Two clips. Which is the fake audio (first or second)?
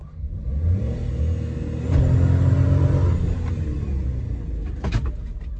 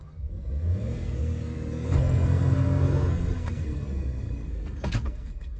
second